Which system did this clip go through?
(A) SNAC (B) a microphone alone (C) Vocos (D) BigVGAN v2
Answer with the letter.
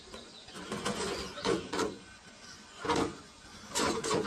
C